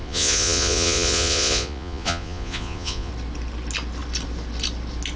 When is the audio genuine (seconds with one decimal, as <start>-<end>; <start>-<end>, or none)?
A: 3.1-5.2